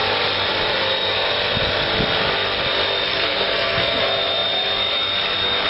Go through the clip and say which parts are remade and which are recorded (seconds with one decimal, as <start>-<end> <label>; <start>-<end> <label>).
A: 0.0-3.1 recorded; 3.1-4.0 remade; 4.0-5.7 recorded